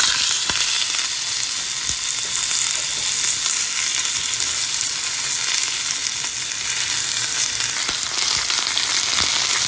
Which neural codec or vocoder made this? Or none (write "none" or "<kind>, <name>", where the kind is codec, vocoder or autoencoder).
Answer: none